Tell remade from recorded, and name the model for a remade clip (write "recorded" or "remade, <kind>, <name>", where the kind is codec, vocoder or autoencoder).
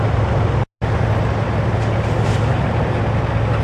recorded